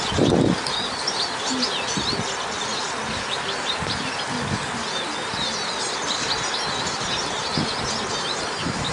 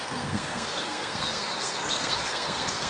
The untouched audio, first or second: first